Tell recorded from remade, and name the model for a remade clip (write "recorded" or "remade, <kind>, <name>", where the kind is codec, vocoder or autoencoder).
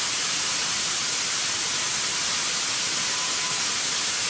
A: recorded